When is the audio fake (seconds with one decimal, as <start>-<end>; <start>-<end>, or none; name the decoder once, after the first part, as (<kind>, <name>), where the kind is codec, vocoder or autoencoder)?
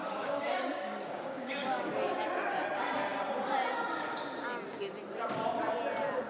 0.0-1.9 (codec, DAC)